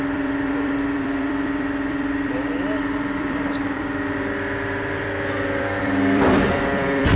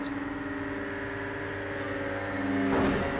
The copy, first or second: first